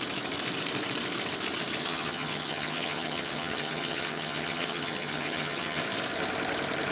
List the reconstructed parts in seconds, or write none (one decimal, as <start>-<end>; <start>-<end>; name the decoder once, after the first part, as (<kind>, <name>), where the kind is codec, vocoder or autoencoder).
1.8-5.8 (vocoder, HiFi-GAN)